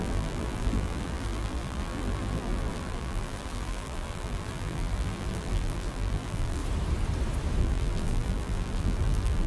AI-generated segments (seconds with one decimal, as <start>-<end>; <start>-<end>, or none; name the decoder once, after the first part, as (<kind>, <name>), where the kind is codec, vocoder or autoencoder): 0.0-6.6 (vocoder, BigVGAN v2); 7.6-9.5